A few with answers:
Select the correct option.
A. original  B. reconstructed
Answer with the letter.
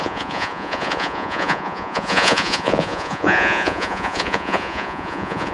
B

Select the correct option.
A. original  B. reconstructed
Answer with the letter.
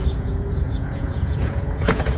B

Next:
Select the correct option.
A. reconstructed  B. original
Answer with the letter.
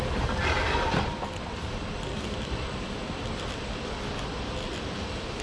B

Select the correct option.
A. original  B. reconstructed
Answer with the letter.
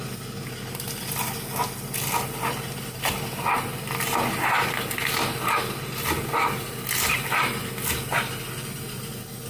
A